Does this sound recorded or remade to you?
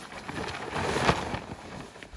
recorded